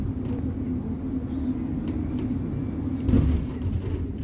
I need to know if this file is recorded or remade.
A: recorded